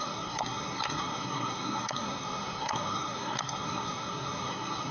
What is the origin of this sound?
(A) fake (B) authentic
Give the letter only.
A